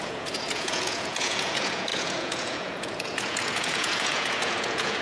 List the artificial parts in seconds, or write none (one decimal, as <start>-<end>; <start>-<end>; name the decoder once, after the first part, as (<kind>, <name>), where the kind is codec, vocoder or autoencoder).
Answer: 0.0-5.0 (vocoder, Vocos)